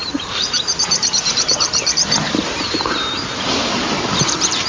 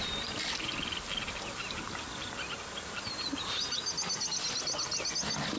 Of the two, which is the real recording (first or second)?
second